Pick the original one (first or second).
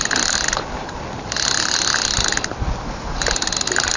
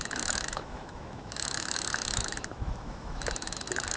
first